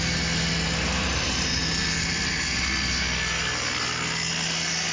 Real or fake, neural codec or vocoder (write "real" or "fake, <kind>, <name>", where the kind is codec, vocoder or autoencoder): real